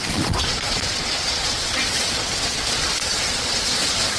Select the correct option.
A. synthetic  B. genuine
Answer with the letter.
A